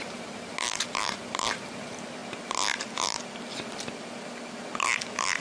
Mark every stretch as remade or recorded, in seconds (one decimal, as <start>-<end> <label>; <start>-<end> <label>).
0.0-2.2 remade; 2.2-5.4 recorded